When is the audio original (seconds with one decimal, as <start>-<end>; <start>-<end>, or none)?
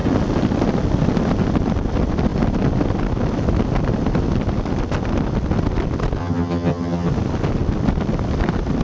0.0-6.2; 7.1-8.8